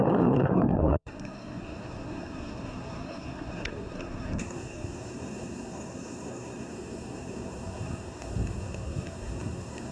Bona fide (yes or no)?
no